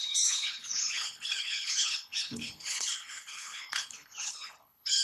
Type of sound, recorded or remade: remade